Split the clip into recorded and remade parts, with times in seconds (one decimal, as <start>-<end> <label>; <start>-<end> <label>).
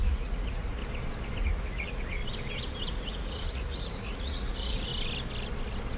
0.0-0.8 remade; 0.8-1.4 recorded; 1.4-2.2 remade; 2.2-2.9 recorded; 2.9-4.9 remade; 4.9-6.0 recorded